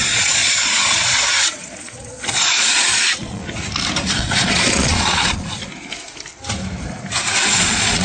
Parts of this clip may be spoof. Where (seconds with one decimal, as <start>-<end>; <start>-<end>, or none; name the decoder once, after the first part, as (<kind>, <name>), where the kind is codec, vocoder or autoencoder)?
0.0-3.4 (vocoder, Vocos); 4.1-5.6; 7.5-8.0

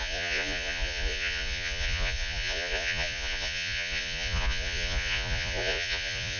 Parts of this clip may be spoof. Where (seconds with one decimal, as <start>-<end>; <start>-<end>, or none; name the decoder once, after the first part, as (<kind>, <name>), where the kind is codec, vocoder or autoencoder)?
0.0-6.4 (vocoder, Vocos)